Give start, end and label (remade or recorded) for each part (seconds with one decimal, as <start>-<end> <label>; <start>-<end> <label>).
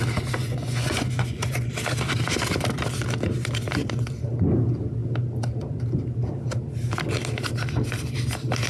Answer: 0.0-0.4 recorded; 0.4-1.7 remade; 1.7-8.7 recorded